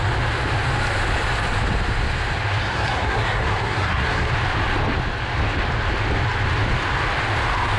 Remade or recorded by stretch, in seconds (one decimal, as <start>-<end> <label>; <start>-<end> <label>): 0.0-2.6 recorded; 2.6-4.3 remade; 4.3-7.8 recorded